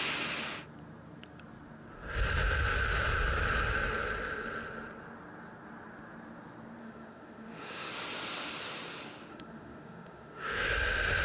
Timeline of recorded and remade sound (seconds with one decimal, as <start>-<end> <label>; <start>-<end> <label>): 0.0-6.8 recorded; 6.8-7.9 remade; 7.9-9.3 recorded; 9.3-10.7 remade; 10.7-11.2 recorded